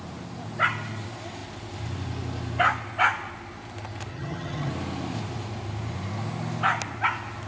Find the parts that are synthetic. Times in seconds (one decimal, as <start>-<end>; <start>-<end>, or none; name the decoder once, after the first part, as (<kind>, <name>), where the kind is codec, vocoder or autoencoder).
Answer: 4.1-4.7 (vocoder, HiFi-GAN)